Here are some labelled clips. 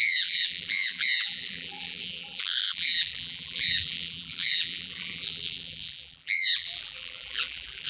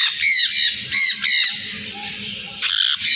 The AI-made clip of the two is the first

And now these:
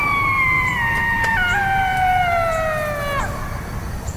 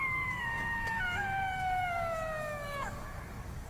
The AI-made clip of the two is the second